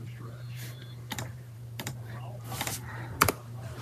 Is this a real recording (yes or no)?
no